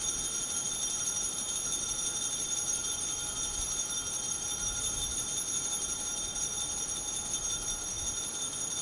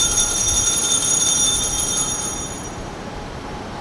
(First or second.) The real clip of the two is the first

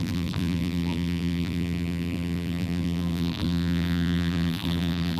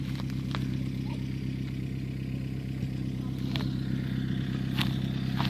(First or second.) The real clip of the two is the second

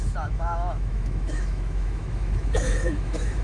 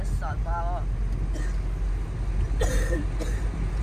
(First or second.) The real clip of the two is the second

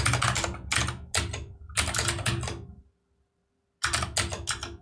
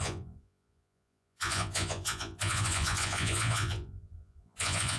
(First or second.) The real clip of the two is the first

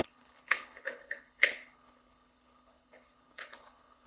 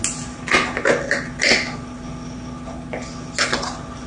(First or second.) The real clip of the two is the second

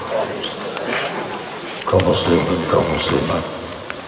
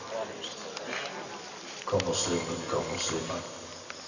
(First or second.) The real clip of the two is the second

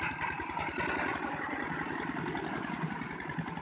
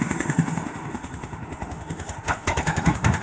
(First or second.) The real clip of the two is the first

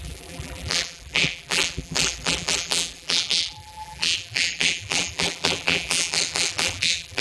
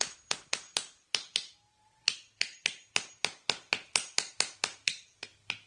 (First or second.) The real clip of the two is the second